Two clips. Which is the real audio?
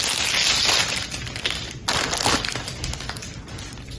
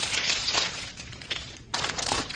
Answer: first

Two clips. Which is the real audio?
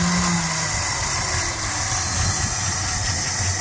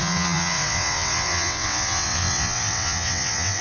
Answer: first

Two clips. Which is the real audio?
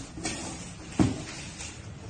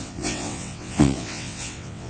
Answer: first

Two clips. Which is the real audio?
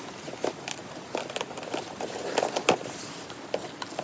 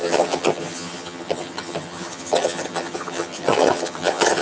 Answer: first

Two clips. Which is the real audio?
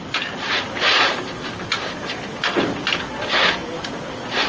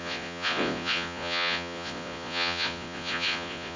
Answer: first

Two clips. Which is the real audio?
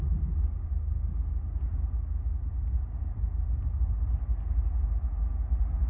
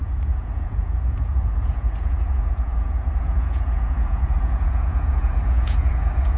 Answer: first